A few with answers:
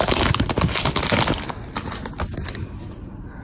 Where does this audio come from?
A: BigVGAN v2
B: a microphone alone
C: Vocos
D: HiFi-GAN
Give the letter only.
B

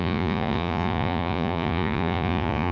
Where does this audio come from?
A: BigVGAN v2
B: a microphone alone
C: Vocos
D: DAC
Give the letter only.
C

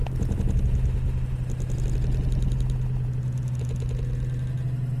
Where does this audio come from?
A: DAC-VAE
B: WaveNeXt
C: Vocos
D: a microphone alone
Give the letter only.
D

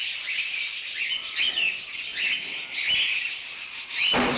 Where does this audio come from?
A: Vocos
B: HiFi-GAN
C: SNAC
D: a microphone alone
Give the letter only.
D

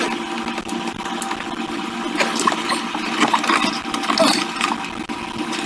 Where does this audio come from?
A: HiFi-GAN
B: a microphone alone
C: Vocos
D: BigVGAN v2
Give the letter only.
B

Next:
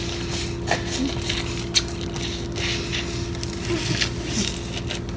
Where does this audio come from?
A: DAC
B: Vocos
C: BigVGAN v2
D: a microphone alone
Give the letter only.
D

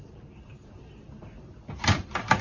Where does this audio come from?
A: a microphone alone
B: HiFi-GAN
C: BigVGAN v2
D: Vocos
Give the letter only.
A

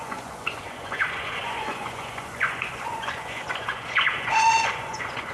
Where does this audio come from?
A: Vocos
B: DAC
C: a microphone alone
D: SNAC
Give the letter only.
A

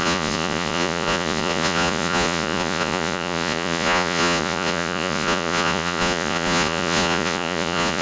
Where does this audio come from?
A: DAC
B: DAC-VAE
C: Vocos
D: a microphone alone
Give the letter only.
C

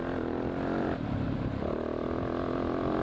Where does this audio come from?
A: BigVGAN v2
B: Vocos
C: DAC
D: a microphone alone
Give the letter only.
D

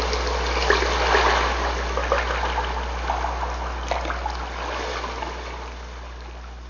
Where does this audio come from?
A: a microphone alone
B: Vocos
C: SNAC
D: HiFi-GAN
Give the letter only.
A